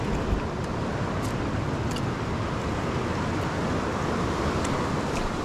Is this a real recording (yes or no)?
yes